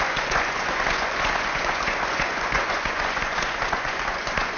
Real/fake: fake